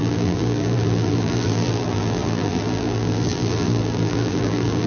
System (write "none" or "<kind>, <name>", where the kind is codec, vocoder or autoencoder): vocoder, BigVGAN v2